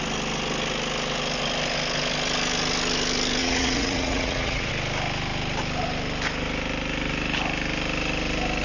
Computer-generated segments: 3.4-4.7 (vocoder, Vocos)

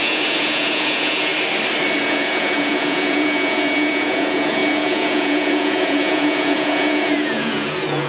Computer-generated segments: 0.0-1.3 (vocoder, Vocos); 2.0-8.1

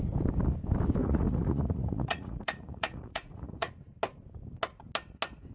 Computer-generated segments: 1.0-3.7 (vocoder, Vocos)

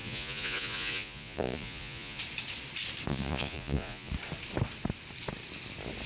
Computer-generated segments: 0.0-2.2 (vocoder, Vocos); 3.1-4.1

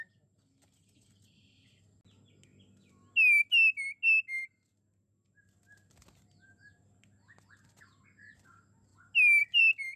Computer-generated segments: none

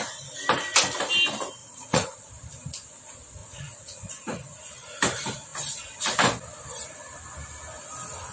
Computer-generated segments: 1.6-2.3 (vocoder, Vocos); 3.4-4.1

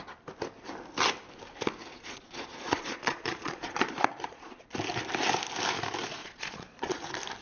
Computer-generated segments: 1.9-4.6 (vocoder, Vocos); 6.2-7.0

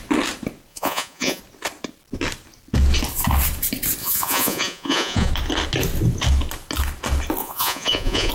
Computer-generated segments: 0.7-1.4 (vocoder, Vocos); 4.0-5.3; 7.4-8.3